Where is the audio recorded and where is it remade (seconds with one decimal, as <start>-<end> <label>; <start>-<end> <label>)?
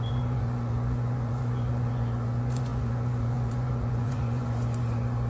0.0-5.3 remade